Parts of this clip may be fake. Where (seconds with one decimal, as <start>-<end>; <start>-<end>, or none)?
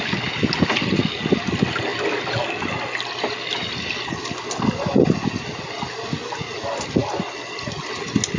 none